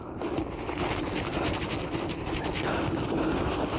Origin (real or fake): real